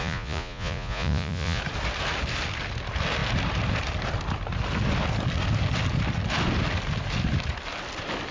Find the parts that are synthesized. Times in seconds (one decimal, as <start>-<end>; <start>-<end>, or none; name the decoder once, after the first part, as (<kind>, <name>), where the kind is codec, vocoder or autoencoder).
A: 0.0-1.6 (vocoder, Vocos)